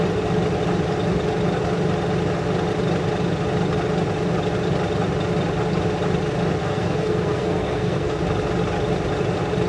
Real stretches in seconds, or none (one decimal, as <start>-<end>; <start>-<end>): 0.0-6.6; 8.2-9.7